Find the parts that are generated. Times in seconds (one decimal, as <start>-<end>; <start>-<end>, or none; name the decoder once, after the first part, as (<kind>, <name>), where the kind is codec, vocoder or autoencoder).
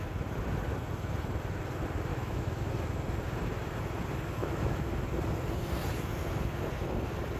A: 2.1-2.7 (autoencoder, DAC-VAE); 4.4-4.9